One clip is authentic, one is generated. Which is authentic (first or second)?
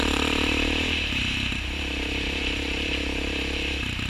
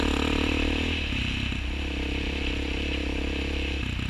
second